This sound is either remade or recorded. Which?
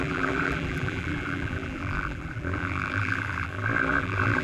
remade